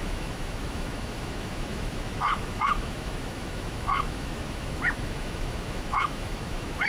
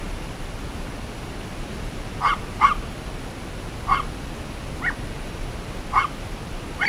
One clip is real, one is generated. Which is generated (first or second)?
first